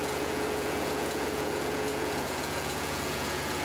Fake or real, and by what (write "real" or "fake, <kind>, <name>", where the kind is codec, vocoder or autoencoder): fake, vocoder, Vocos